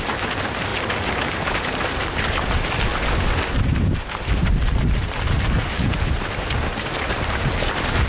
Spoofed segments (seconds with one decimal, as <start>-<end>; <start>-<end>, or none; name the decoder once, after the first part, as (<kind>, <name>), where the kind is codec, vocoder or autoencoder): 0.0-0.7 (vocoder, BigVGAN v2); 1.3-2.9; 3.6-8.1